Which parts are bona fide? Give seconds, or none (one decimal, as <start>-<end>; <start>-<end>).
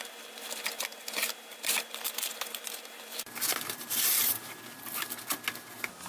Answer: 0.0-0.9; 4.6-6.1